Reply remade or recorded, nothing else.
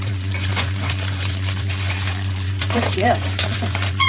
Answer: remade